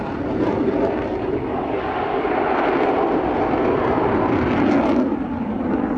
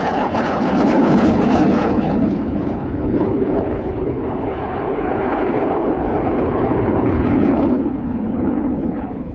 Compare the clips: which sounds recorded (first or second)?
first